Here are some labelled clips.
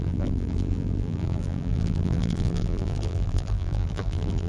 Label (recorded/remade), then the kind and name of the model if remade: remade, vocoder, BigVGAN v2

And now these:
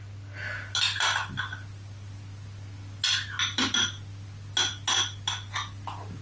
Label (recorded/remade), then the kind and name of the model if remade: recorded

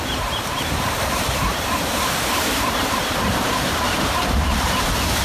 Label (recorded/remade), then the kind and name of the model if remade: remade, vocoder, BigVGAN v2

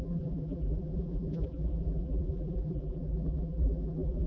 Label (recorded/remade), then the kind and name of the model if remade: remade, vocoder, BigVGAN v2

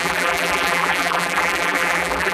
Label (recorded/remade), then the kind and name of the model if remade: remade, vocoder, BigVGAN v2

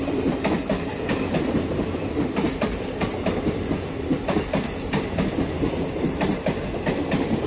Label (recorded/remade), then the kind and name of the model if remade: remade, vocoder, BigVGAN v2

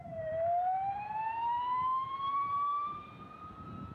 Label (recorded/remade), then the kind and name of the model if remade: recorded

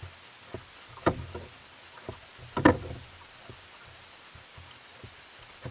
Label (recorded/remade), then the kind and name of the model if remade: recorded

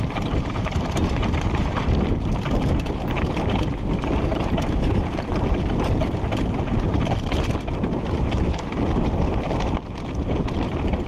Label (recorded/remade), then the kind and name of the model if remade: remade, vocoder, BigVGAN v2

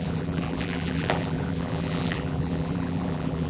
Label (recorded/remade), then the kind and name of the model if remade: remade, vocoder, BigVGAN v2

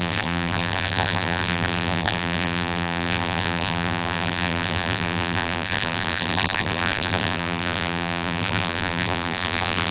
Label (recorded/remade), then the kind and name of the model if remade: remade, vocoder, BigVGAN v2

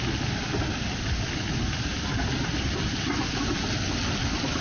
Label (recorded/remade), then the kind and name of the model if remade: recorded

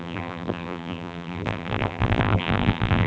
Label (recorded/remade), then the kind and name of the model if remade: remade, vocoder, BigVGAN v2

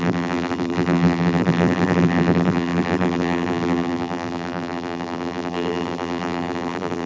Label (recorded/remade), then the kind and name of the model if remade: remade, vocoder, BigVGAN v2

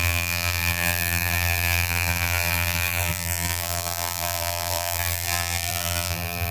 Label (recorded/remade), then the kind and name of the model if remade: remade, vocoder, BigVGAN v2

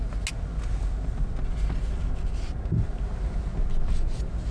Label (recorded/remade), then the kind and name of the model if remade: recorded